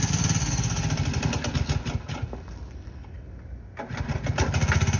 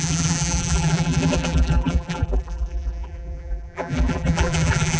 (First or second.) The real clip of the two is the first